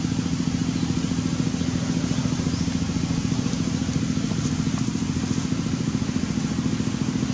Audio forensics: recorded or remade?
recorded